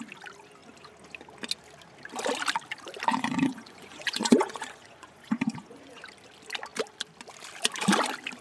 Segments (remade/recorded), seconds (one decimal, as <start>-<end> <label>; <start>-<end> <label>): 0.0-3.1 recorded; 3.1-6.0 remade; 6.0-8.4 recorded